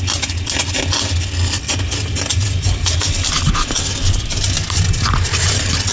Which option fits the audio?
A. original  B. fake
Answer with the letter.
A